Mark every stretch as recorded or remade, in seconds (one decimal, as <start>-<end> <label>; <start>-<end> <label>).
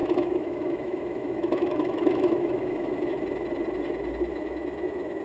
0.0-3.1 remade; 3.1-4.3 recorded; 4.3-5.2 remade